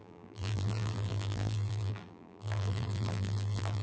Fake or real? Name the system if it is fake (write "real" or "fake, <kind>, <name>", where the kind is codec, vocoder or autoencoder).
fake, vocoder, BigVGAN v2